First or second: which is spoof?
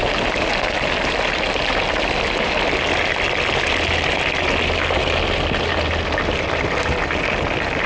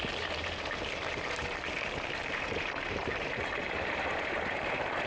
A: second